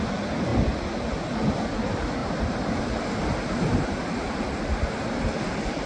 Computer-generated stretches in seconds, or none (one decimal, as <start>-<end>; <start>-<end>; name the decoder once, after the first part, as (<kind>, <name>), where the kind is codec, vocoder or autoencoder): 0.0-0.5 (vocoder, BigVGAN v2); 1.5-5.9